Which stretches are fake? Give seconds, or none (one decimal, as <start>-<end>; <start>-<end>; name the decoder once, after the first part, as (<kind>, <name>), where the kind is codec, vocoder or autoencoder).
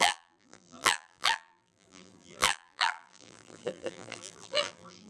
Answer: 0.0-5.1 (vocoder, BigVGAN v2)